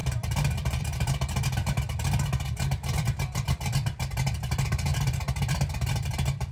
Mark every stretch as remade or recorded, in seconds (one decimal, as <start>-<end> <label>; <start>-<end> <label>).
0.0-1.6 remade; 1.6-3.0 recorded; 3.0-6.5 remade